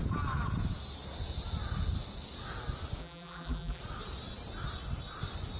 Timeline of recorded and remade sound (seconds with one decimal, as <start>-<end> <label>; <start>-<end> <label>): 0.0-3.0 recorded; 3.0-3.8 remade; 3.8-5.6 recorded